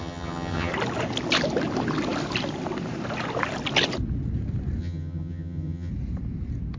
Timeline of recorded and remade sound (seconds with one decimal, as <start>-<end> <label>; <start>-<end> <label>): 0.0-0.7 remade; 0.7-4.8 recorded; 4.8-5.9 remade; 5.9-6.8 recorded